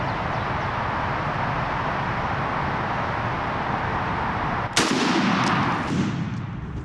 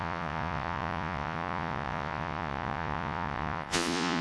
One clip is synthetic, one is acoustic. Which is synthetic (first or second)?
second